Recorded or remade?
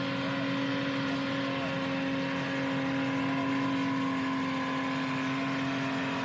recorded